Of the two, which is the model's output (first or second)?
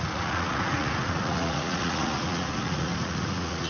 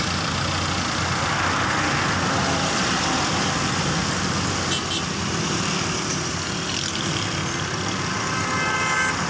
first